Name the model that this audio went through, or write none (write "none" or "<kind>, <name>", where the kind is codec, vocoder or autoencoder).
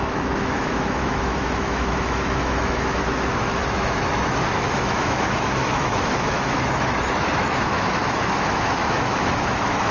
autoencoder, DAC-VAE